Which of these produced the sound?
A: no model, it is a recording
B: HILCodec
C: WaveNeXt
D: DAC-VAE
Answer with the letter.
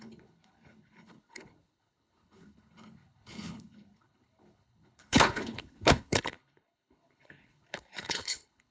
B